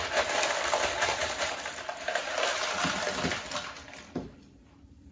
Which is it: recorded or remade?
remade